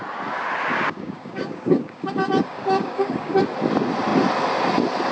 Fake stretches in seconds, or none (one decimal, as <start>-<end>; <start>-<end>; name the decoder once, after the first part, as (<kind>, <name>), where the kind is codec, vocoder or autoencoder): 0.7-3.4 (codec, DAC)

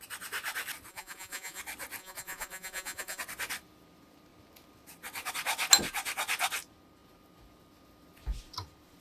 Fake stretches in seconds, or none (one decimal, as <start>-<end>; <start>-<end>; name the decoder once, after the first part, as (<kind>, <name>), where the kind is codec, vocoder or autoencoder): 0.9-1.6 (vocoder, Vocos); 2.0-3.2

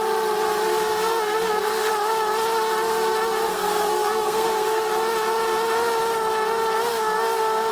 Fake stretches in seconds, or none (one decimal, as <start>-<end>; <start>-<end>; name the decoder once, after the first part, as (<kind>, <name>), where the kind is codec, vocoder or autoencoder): 0.7-1.9 (codec, SNAC); 3.5-4.9; 6.9-7.7

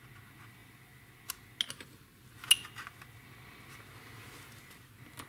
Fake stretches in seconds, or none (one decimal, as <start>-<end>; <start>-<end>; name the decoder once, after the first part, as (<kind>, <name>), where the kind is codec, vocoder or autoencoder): none

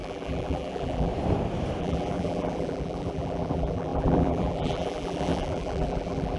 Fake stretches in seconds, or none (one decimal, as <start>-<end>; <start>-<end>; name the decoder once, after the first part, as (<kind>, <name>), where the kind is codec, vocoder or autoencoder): 0.0-1.1 (vocoder, BigVGAN v2); 1.8-6.4